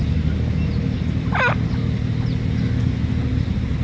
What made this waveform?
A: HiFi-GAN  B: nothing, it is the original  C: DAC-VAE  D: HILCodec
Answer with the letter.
B